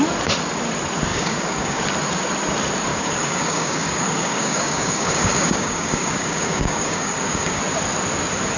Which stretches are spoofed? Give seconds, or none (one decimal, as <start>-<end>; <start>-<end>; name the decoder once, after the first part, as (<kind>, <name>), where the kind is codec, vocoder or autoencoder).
1.1-1.8 (codec, DAC); 2.9-7.6